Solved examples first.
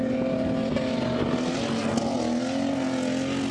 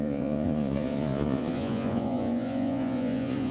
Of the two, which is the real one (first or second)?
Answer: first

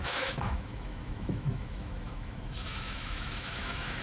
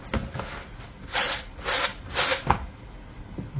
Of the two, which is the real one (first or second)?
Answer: second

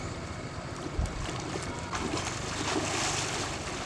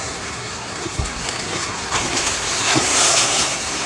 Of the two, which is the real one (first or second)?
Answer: first